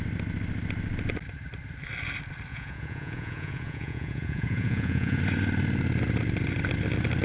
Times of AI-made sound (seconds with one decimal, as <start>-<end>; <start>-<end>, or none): 2.5-5.2